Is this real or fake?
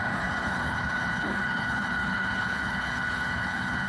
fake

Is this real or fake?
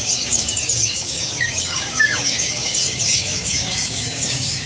fake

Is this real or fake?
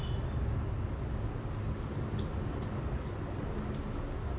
real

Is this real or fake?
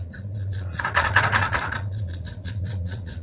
fake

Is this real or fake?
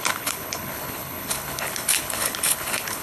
fake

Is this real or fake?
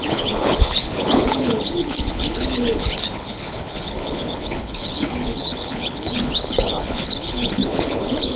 fake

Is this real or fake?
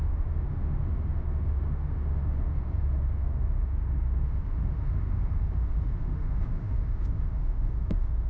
fake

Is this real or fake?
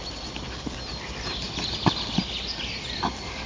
real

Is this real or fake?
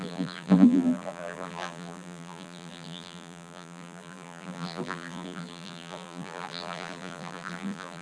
fake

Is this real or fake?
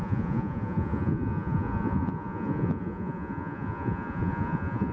fake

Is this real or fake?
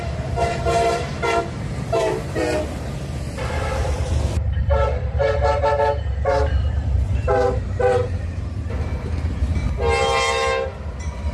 fake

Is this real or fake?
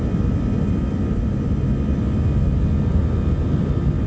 real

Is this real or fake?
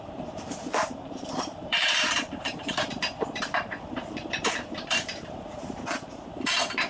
fake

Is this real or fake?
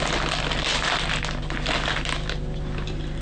real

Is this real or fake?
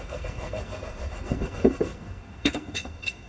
fake